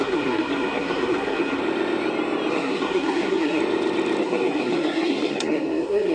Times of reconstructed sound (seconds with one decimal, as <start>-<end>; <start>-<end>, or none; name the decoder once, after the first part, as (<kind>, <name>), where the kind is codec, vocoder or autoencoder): 0.0-1.6 (codec, SNAC); 2.5-3.6; 4.2-6.1